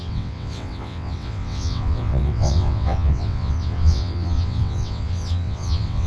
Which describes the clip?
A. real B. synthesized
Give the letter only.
B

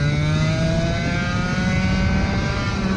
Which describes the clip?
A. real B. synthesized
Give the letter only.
A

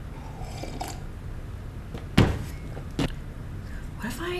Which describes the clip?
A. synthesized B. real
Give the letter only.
B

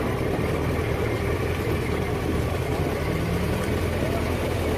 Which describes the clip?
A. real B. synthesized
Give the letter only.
A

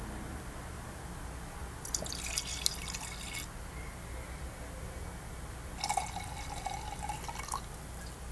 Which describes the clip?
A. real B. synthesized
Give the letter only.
A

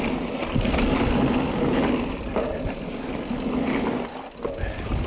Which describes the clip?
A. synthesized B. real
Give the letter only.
B